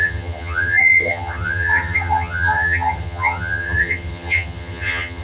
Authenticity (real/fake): fake